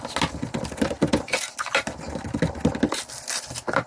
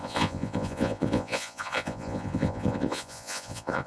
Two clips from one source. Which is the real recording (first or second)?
first